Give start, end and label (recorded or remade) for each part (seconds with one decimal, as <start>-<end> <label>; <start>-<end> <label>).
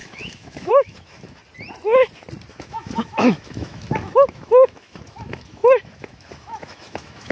0.0-1.4 remade; 1.4-2.5 recorded; 2.5-7.3 remade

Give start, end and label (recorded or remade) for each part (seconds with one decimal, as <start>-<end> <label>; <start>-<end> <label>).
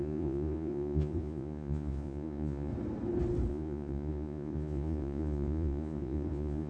0.0-2.7 remade; 2.7-3.5 recorded; 3.5-6.7 remade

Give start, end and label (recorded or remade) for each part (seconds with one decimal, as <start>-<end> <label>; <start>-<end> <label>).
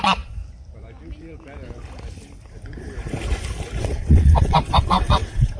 0.0-0.4 remade; 0.4-3.8 recorded; 3.8-5.6 remade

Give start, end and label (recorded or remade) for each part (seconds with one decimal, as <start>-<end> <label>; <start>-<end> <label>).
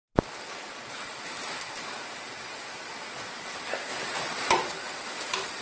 0.0-3.9 recorded; 3.9-4.5 remade; 4.5-5.6 recorded